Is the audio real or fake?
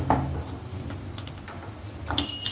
real